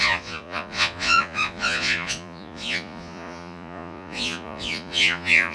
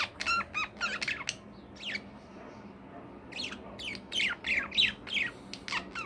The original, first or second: second